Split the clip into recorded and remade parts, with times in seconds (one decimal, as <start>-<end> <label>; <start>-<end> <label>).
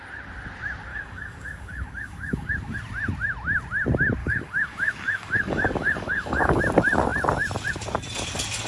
0.0-0.9 recorded; 0.9-2.8 remade; 2.8-4.2 recorded; 4.2-6.6 remade; 6.6-8.7 recorded